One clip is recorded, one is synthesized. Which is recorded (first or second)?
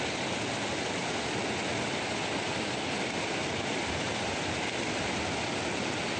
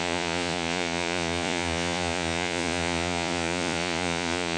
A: first